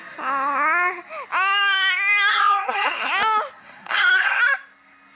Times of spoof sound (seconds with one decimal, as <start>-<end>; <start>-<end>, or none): 2.3-3.1; 3.6-4.4